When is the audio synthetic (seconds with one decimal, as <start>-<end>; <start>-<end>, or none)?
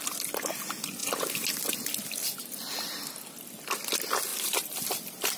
1.0-3.2; 4.3-5.4